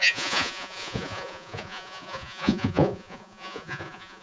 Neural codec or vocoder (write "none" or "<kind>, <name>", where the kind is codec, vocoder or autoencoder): vocoder, Vocos